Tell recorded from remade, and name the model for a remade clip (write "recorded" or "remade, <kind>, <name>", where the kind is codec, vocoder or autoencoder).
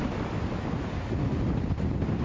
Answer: recorded